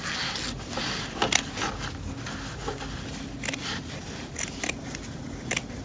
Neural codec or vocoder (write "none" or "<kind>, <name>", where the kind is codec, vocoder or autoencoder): none